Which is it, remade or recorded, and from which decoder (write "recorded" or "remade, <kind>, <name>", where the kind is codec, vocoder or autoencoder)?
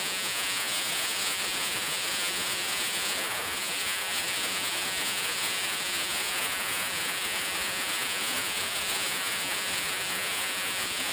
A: remade, vocoder, Vocos